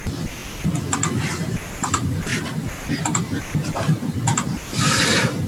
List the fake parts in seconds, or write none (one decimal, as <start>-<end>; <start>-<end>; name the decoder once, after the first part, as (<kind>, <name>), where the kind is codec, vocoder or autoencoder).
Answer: 0.0-0.4 (vocoder, BigVGAN v2); 1.2-5.5